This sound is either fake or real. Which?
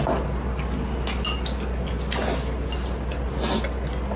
real